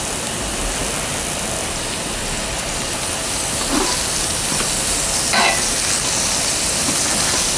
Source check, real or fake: real